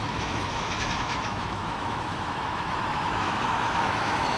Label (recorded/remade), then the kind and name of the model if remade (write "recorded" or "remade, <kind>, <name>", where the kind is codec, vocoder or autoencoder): remade, autoencoder, DAC-VAE